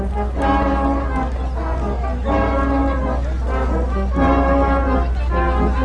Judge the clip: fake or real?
real